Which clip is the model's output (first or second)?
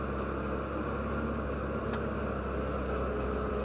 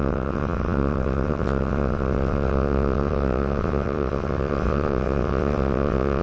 second